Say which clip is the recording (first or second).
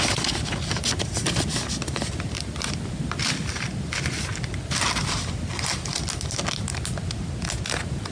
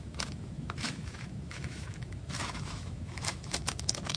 first